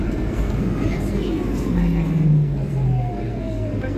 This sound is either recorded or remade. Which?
remade